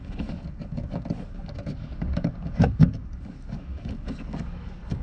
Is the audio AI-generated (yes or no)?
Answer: yes